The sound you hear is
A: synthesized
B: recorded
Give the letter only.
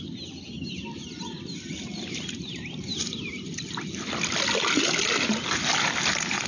B